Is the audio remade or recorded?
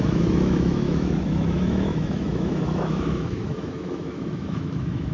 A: remade